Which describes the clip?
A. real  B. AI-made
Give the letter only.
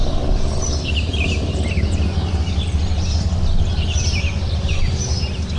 A